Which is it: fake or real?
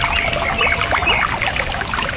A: real